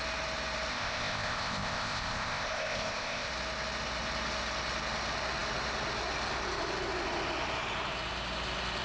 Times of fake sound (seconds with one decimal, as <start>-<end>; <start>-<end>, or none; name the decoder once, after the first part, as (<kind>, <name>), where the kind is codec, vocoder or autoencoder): 0.7-3.3 (codec, ZipCodec)